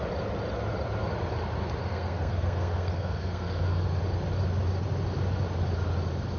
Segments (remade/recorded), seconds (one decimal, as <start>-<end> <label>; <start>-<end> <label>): 0.0-1.8 recorded; 1.8-4.0 remade; 4.0-6.4 recorded